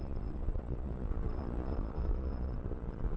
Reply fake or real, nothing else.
fake